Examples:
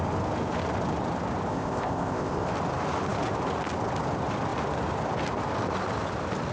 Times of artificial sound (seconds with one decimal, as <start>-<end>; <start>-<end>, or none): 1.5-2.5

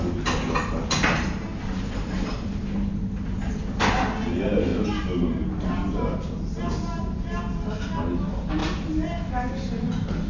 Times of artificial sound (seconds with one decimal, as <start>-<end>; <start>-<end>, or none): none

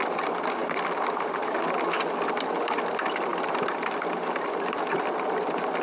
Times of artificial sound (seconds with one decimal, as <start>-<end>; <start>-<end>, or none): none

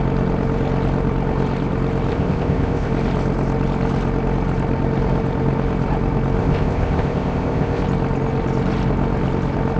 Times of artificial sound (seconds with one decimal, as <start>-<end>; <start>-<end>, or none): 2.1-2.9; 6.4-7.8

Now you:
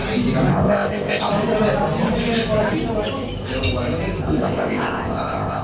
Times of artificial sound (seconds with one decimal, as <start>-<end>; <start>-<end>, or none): 0.5-1.3; 4.2-5.6